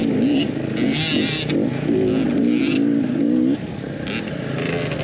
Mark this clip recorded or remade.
recorded